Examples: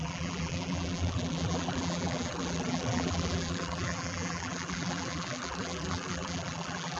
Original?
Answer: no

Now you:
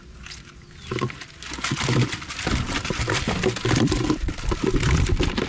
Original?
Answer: yes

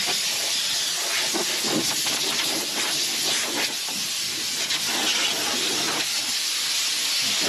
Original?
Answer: yes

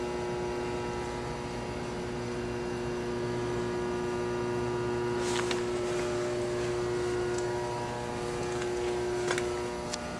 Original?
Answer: yes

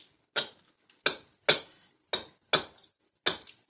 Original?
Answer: yes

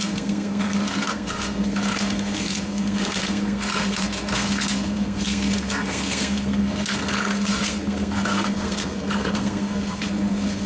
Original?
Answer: no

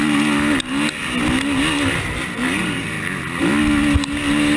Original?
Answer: yes